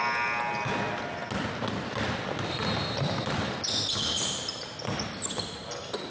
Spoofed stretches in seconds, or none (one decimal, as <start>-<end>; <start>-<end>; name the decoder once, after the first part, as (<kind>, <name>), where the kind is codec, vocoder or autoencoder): none